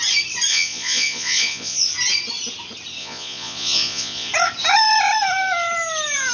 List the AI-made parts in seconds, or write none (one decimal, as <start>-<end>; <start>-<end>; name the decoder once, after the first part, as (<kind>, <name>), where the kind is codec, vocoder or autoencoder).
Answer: 0.5-1.9 (vocoder, Vocos); 3.0-4.3